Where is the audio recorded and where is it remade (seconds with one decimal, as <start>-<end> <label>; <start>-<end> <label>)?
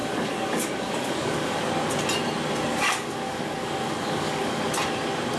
0.0-1.6 remade; 1.6-2.7 recorded; 2.7-4.6 remade; 4.6-5.4 recorded